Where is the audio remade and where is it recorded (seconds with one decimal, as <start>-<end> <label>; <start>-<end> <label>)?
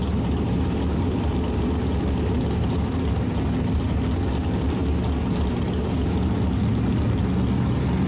0.0-8.1 recorded